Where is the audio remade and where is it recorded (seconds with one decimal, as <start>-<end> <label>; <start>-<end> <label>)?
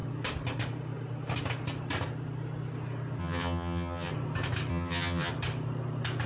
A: 0.0-3.2 recorded; 3.2-4.1 remade; 4.1-4.7 recorded; 4.7-5.3 remade; 5.3-6.3 recorded